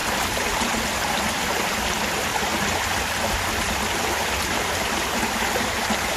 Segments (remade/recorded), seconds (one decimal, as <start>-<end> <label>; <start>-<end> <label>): 0.0-2.3 recorded; 2.3-3.7 remade; 3.7-6.2 recorded